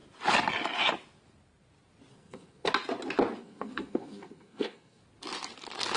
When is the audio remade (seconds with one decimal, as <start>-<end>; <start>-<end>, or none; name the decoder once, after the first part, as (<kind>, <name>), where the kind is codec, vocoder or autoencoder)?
2.1-2.7 (codec, SNAC); 3.4-5.0